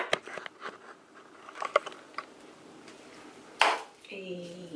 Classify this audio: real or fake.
real